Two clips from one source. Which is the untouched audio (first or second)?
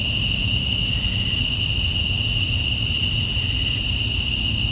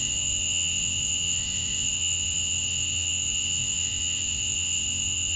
first